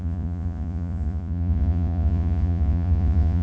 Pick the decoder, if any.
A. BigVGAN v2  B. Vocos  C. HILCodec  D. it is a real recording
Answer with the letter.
B